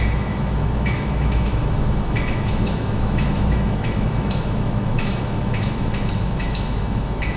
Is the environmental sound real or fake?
fake